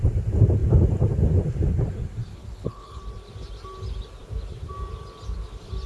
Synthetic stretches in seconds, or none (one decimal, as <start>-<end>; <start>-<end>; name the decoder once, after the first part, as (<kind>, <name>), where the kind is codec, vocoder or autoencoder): 2.3-3.0 (codec, HILCodec)